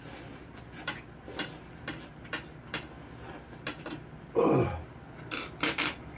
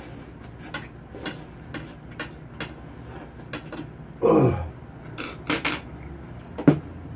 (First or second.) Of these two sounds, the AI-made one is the first